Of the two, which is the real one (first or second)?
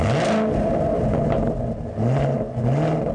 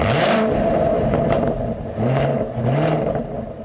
first